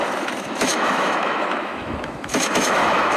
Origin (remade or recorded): remade